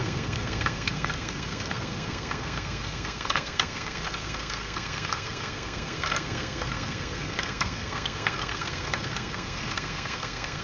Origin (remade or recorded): remade